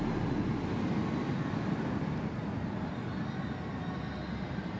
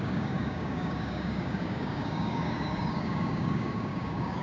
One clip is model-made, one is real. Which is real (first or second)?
first